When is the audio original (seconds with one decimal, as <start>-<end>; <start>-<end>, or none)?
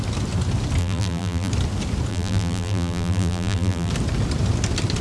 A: 0.0-0.8; 1.5-2.1; 3.9-5.0